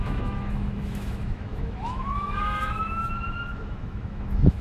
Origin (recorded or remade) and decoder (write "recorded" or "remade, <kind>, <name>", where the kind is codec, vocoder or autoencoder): remade, autoencoder, DAC-VAE